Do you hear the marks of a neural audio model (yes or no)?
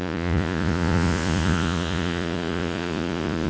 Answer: yes